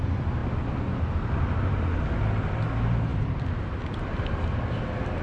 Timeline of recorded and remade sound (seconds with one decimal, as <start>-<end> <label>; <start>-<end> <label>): 0.0-5.2 recorded